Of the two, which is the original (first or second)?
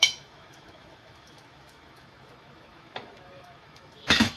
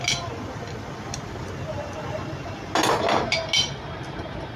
second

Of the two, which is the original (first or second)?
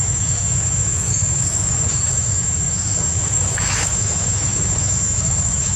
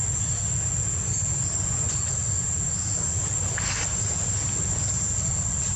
second